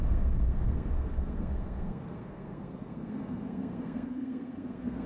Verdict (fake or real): fake